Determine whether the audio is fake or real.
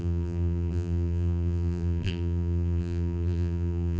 fake